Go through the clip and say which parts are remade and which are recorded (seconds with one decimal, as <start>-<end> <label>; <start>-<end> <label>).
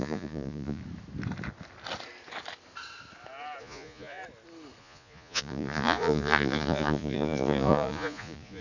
0.0-0.8 remade; 0.8-3.6 recorded; 3.6-4.2 remade; 4.2-4.8 recorded; 4.8-8.6 remade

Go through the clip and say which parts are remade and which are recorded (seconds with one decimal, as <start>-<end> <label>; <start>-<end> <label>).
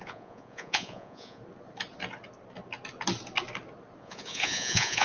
0.0-1.4 remade; 1.4-4.0 recorded; 4.0-5.0 remade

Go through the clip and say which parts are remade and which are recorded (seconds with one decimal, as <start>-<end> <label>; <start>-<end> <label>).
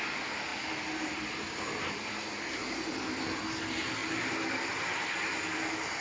0.0-6.0 recorded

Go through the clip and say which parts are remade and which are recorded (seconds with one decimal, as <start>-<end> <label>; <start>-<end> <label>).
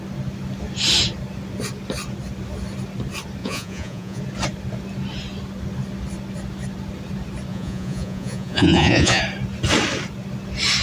0.0-3.4 recorded; 3.4-4.2 remade; 4.2-7.5 recorded; 7.5-9.2 remade; 9.2-10.8 recorded